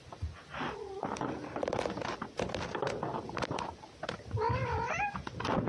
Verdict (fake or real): real